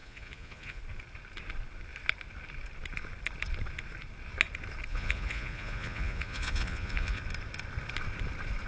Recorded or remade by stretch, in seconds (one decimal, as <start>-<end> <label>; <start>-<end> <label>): 0.0-0.8 remade; 0.8-4.9 recorded; 4.9-7.2 remade; 7.2-8.7 recorded